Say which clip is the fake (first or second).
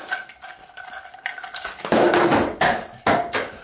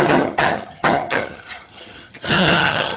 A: second